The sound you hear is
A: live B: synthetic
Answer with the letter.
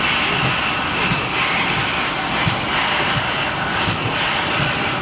A